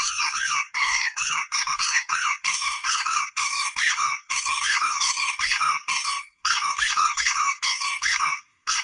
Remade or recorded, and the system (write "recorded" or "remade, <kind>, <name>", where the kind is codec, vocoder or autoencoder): remade, codec, SNAC